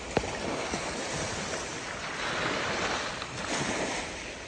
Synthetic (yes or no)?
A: no